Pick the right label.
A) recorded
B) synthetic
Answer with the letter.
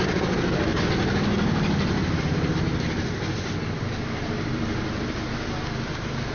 A